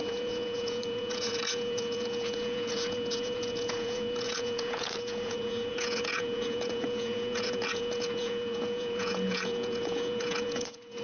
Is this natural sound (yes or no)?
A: no